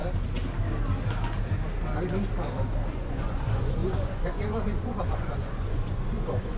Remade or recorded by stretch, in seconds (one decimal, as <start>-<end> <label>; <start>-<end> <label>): 0.0-2.9 recorded; 2.9-6.6 remade